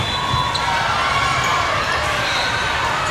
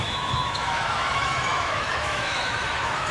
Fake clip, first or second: second